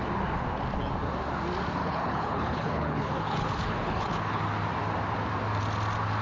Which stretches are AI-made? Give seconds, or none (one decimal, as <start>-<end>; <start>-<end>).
1.8-4.4